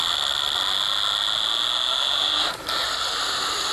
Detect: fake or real real